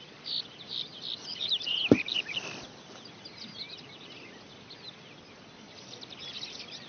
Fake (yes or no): no